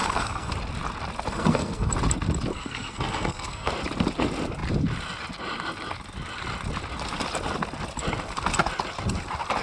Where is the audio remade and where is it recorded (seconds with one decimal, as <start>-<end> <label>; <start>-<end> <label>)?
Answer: 0.0-0.5 remade; 0.5-1.3 recorded; 1.3-1.9 remade; 1.9-2.5 recorded; 2.5-3.7 remade; 3.7-9.6 recorded